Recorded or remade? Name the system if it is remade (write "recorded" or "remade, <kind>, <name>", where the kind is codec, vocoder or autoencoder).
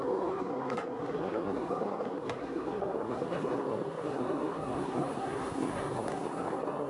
remade, codec, SNAC